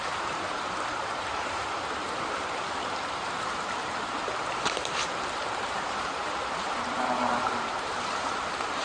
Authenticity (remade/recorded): remade